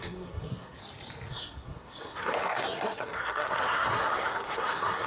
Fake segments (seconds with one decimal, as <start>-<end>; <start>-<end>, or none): 0.0-0.8; 1.3-5.1